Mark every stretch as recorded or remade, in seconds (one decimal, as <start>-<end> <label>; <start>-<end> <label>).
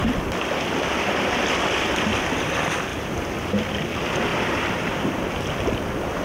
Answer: 0.0-2.9 recorded; 2.9-3.5 remade; 3.5-4.3 recorded; 4.3-5.4 remade; 5.4-6.2 recorded